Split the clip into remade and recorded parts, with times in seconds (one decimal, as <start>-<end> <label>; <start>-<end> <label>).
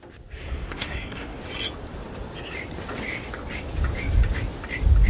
0.0-0.5 recorded; 0.5-1.4 remade; 1.4-5.1 recorded